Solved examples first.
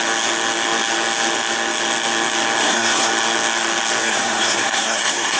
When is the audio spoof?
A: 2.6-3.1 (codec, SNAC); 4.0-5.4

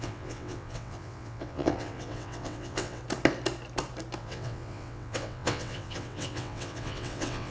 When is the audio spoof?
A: 0.0-3.0 (vocoder, WaveNeXt); 4.2-7.5